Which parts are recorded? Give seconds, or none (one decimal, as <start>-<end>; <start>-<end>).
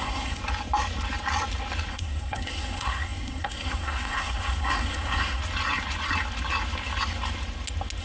0.4-1.9; 5.4-8.0